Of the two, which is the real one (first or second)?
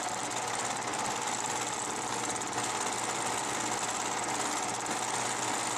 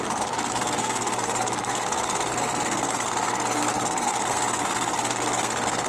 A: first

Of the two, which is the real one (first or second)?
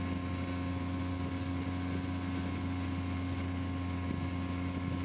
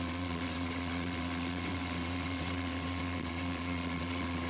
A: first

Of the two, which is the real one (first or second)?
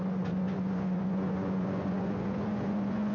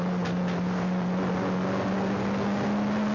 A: second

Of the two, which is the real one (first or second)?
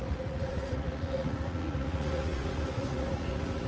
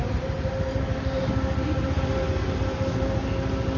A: second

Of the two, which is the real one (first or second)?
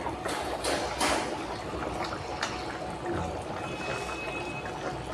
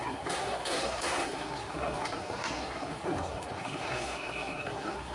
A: first